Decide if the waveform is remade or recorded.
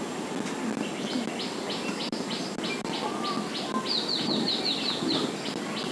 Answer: recorded